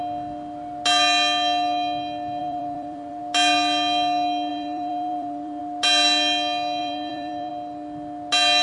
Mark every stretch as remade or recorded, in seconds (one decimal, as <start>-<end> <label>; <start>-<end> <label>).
0.0-2.4 recorded; 2.4-3.2 remade; 3.2-4.5 recorded; 4.5-5.6 remade; 5.6-6.8 recorded; 6.8-7.5 remade; 7.5-8.6 recorded